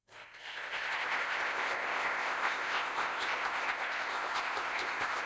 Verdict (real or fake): fake